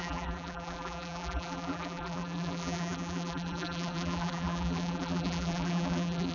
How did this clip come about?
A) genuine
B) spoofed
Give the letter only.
B